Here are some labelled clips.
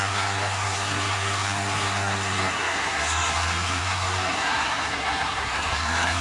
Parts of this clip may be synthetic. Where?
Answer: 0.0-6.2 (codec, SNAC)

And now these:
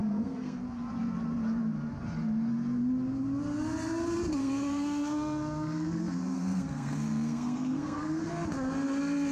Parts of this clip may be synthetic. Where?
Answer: 0.0-0.6 (codec, SNAC); 4.4-8.3

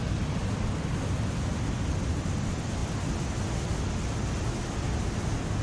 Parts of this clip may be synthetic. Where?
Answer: none

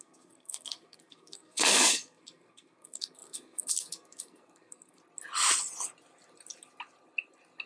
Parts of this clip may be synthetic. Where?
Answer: 0.0-5.0 (codec, SNAC)

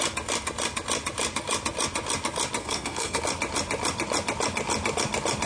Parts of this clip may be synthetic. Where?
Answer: 2.6-3.2 (codec, SNAC)

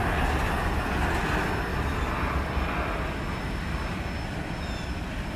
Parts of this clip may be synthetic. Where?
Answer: none